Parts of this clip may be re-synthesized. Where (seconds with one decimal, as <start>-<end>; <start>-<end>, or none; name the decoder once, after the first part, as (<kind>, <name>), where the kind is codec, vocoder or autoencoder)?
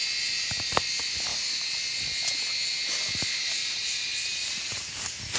0.0-0.8 (vocoder, BigVGAN v2)